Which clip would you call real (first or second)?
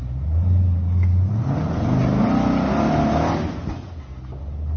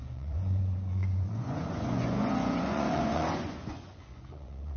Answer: first